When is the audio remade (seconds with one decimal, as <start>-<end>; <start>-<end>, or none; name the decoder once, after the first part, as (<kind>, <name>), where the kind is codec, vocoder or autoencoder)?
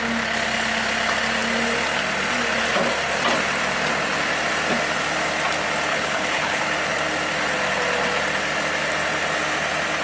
5.9-6.6 (codec, HILCodec)